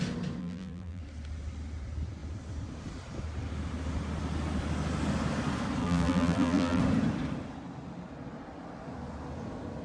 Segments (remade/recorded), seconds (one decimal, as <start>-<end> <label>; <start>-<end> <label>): 0.0-0.4 recorded; 0.4-1.0 remade; 1.0-5.8 recorded; 5.8-6.8 remade; 6.8-9.8 recorded